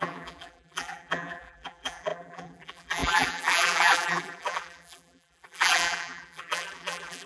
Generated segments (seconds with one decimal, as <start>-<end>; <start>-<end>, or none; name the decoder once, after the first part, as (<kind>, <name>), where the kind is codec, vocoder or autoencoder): 0.0-7.3 (vocoder, BigVGAN v2)